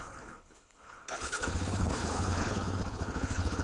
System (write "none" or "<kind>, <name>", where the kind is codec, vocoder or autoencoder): codec, HILCodec